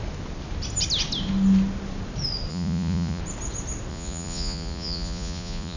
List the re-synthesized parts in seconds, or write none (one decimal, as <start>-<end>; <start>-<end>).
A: 2.5-3.2; 3.9-5.8